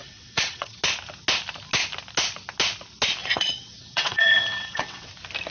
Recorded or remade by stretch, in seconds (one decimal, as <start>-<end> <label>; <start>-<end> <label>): 0.0-0.8 remade; 0.8-3.2 recorded; 3.2-5.1 remade; 5.1-5.5 recorded